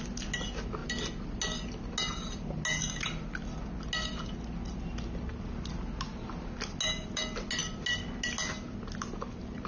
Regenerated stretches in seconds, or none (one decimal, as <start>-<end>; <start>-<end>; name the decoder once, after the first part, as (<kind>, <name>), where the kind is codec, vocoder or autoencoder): none